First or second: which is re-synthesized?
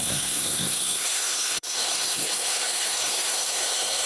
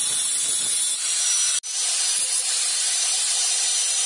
first